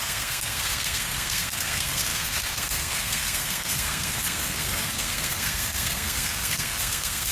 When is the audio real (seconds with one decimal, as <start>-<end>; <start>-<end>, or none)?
none